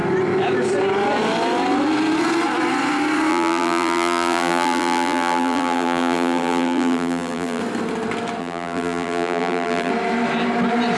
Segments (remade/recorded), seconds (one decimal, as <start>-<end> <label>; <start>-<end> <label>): 0.0-3.3 recorded; 3.3-7.6 remade; 7.6-8.4 recorded; 8.4-9.9 remade; 9.9-11.0 recorded